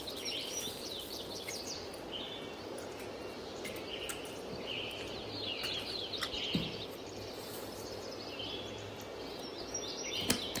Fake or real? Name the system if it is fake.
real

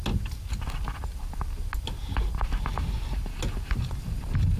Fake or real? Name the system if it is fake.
real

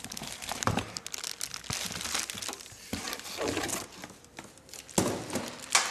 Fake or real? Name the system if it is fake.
real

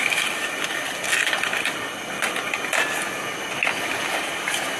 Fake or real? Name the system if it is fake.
real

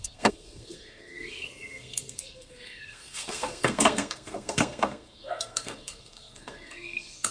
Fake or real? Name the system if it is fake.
fake, codec, SNAC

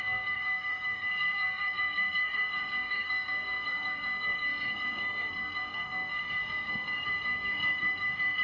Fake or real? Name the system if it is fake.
fake, codec, SNAC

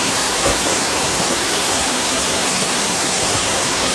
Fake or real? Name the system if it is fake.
fake, codec, SNAC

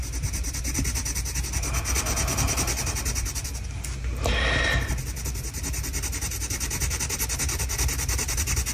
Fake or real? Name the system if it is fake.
real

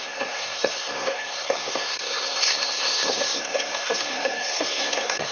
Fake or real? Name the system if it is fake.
fake, codec, SNAC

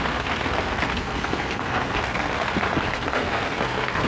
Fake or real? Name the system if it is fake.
fake, codec, SNAC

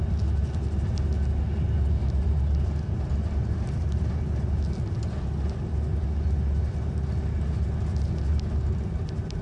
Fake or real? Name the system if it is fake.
real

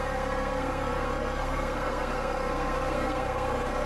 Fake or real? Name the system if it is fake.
fake, codec, SNAC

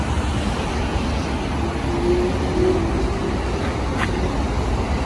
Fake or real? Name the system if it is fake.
real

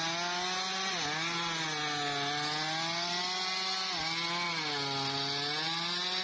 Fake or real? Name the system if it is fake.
real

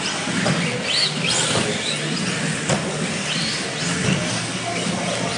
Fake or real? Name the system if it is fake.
real